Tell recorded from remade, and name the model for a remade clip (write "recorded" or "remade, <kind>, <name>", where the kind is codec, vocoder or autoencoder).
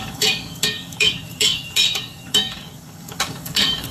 remade, codec, DAC